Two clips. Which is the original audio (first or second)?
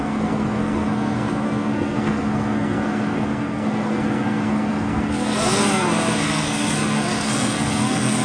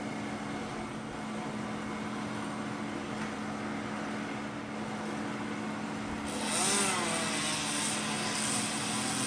second